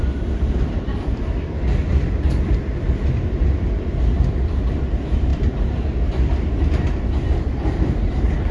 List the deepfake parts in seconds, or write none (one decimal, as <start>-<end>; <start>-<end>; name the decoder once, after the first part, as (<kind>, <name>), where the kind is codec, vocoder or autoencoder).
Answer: 0.0-8.5 (vocoder, BigVGAN v2)